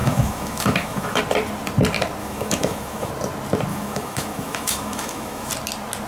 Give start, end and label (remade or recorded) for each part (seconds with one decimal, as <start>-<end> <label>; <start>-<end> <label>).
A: 0.0-1.2 remade; 1.2-2.2 recorded; 2.2-3.1 remade; 3.1-3.7 recorded; 3.7-5.5 remade; 5.5-6.1 recorded